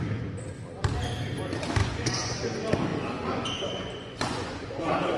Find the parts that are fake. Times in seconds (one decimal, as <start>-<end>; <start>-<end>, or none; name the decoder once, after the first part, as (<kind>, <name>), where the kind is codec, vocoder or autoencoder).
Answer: 1.8-2.4 (vocoder, Vocos); 2.9-5.2